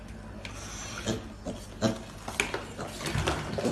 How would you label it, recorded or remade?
recorded